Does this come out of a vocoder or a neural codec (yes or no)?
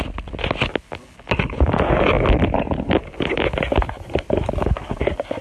no